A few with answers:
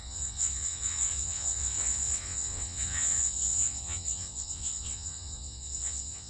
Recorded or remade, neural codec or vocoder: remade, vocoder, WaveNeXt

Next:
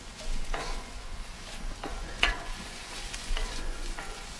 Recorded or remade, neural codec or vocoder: remade, vocoder, Vocos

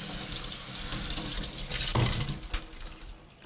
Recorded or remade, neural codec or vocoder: recorded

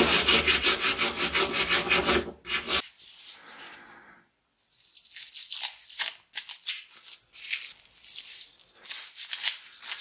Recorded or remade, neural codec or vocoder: recorded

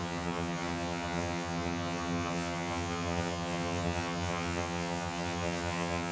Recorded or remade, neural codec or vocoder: remade, vocoder, HiFi-GAN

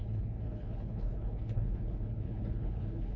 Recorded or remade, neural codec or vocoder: remade, codec, HILCodec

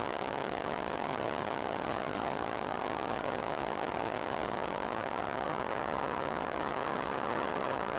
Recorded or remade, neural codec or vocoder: remade, vocoder, HiFi-GAN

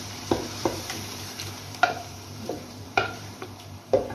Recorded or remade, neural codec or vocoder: remade, vocoder, BigVGAN v2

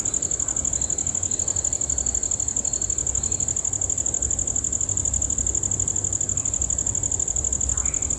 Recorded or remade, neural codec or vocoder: recorded